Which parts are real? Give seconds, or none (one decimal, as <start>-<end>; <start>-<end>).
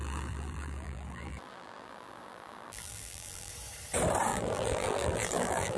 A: 3.5-4.3